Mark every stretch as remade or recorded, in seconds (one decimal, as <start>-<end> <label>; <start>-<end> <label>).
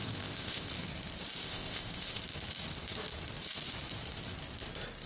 0.0-0.7 remade; 0.7-1.4 recorded; 1.4-2.2 remade; 2.2-5.1 recorded